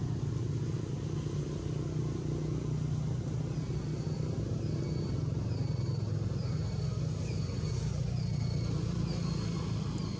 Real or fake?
real